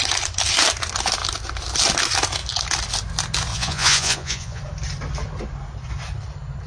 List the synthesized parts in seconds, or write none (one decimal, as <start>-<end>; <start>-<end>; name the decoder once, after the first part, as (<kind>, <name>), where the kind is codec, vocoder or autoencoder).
3.5-4.6 (vocoder, Vocos)